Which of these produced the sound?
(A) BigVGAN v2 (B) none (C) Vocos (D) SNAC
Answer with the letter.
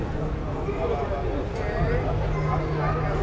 B